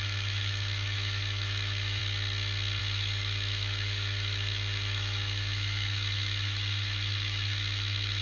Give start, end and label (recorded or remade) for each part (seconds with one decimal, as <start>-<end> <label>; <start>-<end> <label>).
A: 0.0-2.0 remade; 2.0-2.8 recorded; 2.8-8.2 remade